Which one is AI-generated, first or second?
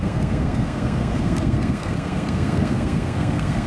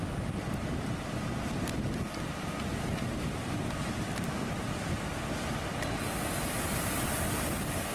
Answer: first